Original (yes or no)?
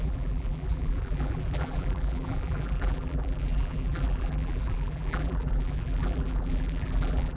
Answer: no